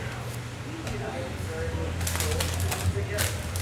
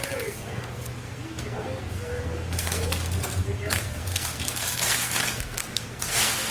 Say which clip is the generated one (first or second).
second